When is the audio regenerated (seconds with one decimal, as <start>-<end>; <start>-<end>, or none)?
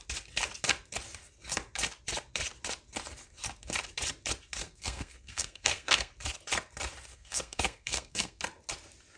4.6-6.1; 7.1-8.4